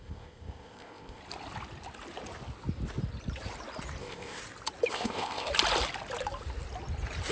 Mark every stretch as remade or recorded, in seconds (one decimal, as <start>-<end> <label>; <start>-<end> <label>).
0.0-1.2 remade; 1.2-4.0 recorded; 4.0-4.4 remade; 4.4-4.9 recorded; 4.9-5.5 remade; 5.5-7.3 recorded